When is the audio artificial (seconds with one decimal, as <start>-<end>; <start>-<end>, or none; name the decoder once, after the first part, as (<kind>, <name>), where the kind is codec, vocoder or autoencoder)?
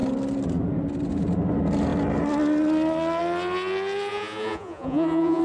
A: 4.1-5.4 (vocoder, Vocos)